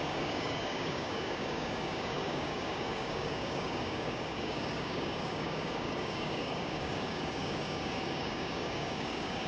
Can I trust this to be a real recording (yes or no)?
no